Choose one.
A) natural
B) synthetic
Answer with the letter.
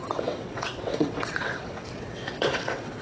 B